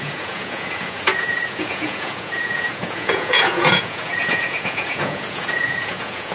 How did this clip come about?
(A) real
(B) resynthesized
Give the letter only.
B